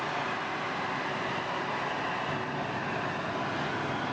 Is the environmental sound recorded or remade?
recorded